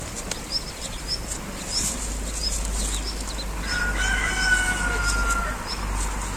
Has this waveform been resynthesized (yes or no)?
no